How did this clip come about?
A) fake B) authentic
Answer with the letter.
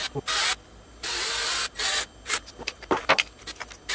B